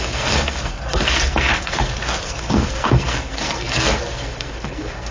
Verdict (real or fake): fake